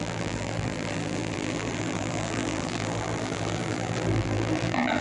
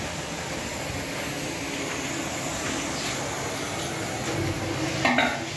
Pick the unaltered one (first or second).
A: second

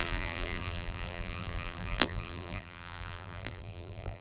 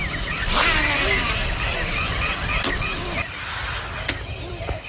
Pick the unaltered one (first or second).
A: second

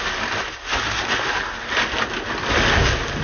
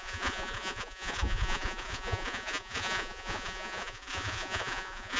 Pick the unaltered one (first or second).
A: first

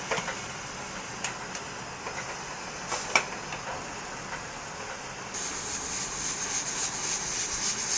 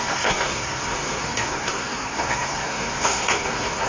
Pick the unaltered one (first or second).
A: first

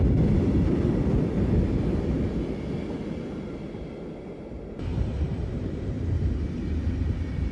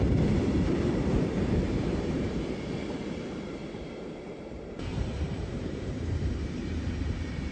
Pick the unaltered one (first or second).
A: first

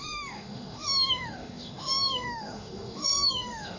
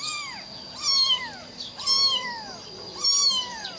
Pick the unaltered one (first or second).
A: second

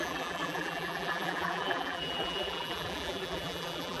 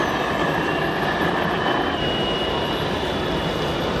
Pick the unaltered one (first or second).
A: second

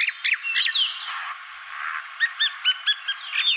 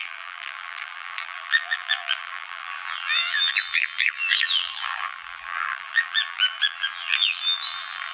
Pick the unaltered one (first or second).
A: first